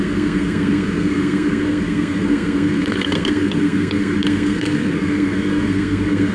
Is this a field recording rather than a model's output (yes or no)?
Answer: no